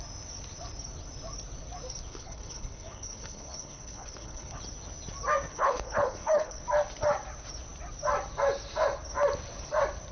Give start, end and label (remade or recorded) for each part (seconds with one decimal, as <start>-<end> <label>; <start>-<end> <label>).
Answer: 0.0-2.1 recorded; 2.1-4.6 remade; 4.6-5.5 recorded; 5.5-6.6 remade; 6.6-10.1 recorded